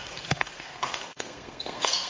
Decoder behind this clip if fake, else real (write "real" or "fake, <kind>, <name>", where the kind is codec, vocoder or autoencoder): fake, codec, SNAC